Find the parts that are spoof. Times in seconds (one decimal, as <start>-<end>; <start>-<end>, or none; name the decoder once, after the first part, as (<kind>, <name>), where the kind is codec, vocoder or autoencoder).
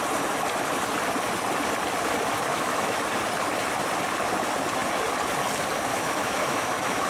2.5-3.0 (autoencoder, DAC-VAE); 5.9-7.1